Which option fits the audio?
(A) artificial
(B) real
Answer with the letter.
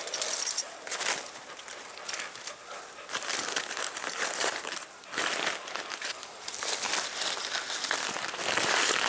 B